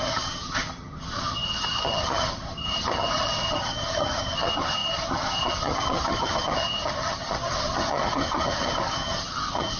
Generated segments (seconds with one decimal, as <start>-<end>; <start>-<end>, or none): 0.0-9.8